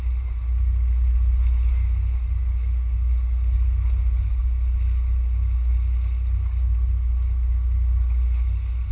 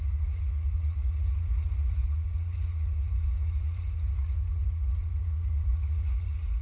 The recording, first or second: first